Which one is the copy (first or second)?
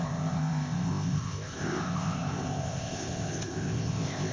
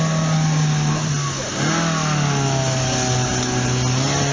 first